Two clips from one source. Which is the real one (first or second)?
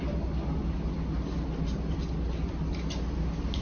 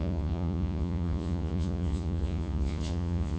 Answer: first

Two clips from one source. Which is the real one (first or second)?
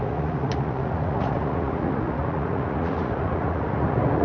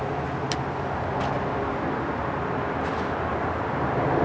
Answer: second